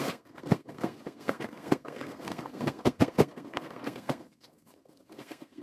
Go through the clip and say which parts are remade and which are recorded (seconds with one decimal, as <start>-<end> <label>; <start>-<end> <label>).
0.0-5.6 remade